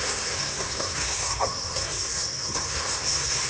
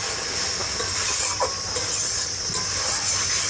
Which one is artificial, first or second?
first